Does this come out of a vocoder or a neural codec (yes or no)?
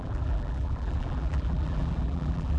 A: yes